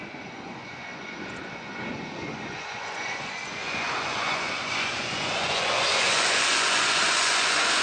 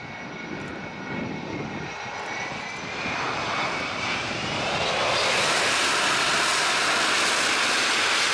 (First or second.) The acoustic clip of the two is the second